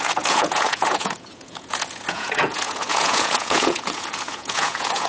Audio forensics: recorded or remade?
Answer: remade